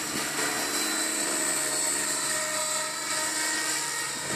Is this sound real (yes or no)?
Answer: yes